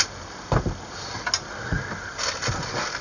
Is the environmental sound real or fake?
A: real